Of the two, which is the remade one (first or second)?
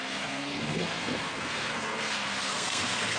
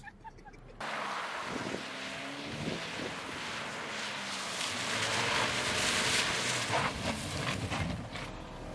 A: first